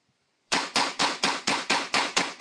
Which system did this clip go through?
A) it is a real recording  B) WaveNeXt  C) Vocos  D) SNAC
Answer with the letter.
C